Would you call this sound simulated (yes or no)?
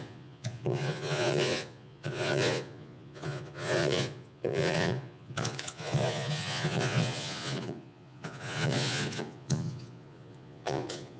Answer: yes